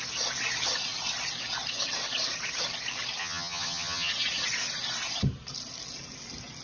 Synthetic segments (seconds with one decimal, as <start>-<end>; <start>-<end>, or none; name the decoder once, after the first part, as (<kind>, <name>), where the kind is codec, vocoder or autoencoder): 3.2-4.1 (vocoder, HiFi-GAN)